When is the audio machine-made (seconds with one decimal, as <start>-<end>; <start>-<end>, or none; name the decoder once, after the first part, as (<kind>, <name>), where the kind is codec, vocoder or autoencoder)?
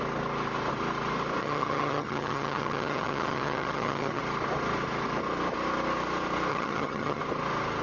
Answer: 1.4-4.2 (vocoder, HiFi-GAN); 6.5-7.2